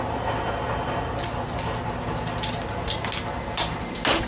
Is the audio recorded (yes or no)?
yes